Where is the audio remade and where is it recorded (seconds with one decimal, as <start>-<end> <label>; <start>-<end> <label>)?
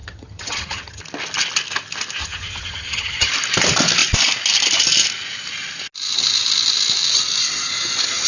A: 0.0-1.0 remade; 1.0-2.2 recorded; 2.2-3.3 remade; 3.3-8.3 recorded